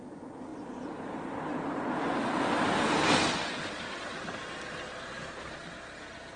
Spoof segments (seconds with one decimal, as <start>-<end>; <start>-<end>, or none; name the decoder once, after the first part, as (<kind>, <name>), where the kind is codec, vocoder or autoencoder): none